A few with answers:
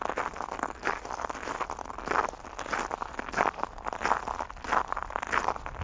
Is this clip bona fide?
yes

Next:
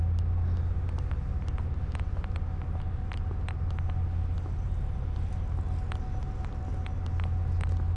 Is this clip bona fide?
yes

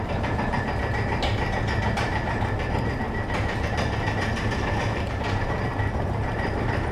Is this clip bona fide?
no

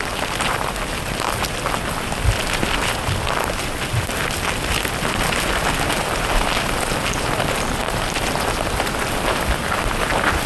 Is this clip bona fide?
yes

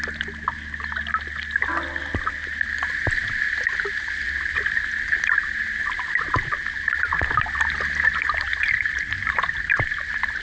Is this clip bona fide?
yes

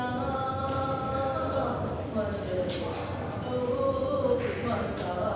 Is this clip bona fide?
yes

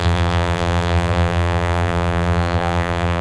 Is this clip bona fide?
no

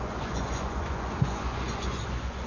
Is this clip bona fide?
no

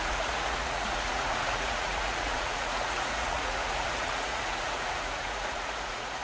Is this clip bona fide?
no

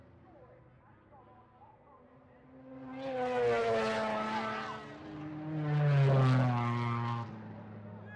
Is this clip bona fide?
yes